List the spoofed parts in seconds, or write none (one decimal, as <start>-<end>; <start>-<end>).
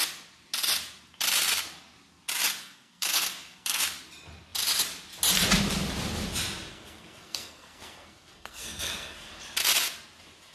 2.6-3.8; 6.7-9.3